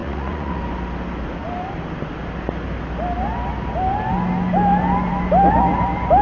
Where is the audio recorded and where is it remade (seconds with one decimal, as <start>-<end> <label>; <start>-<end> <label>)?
0.0-0.6 remade; 0.6-6.2 recorded